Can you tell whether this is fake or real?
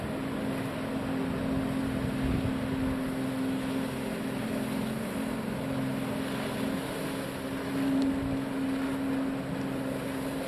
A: real